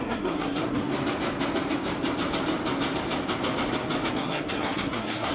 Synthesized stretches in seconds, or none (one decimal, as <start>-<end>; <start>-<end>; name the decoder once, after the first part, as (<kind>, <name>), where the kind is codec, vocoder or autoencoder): 0.0-0.9 (codec, SNAC); 4.1-5.3

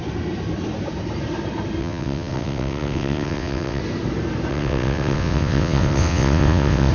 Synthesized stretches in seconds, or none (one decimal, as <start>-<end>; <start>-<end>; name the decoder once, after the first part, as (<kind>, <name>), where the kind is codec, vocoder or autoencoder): 1.8-3.8 (vocoder, WaveNeXt); 4.5-6.9

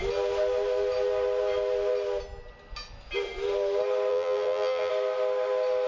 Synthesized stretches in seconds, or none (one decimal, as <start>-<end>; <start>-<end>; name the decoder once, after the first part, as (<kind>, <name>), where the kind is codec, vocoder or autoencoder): 4.1-4.9 (vocoder, BigVGAN v2)